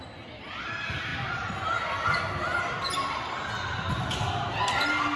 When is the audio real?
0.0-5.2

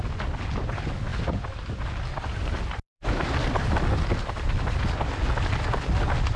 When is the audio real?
0.0-1.1; 4.8-6.4

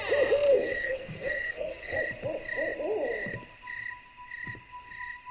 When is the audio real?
0.0-0.5; 2.0-5.3